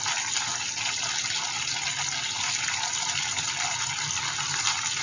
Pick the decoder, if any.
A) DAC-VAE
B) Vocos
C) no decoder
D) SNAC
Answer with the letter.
C